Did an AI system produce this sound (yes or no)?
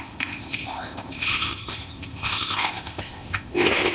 yes